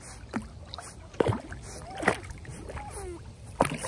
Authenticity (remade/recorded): recorded